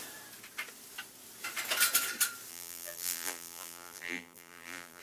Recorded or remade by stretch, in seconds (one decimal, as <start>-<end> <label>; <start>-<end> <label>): 0.0-2.5 recorded; 2.5-5.0 remade